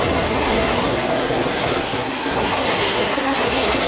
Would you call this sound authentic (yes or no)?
no